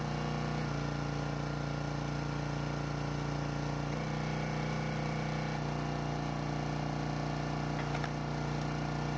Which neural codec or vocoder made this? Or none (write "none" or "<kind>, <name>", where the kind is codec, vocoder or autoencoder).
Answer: none